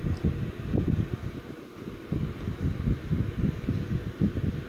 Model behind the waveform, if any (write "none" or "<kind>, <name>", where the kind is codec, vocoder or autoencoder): none